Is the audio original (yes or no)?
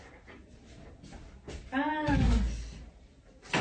yes